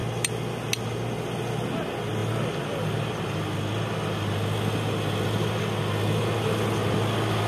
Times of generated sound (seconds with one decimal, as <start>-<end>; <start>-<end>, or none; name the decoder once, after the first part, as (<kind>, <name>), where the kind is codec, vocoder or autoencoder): none